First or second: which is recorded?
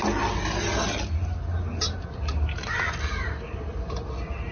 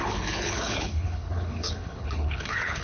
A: first